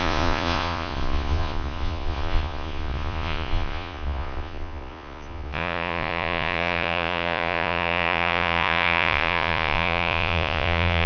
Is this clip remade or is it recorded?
remade